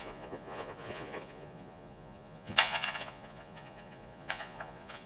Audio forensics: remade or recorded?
remade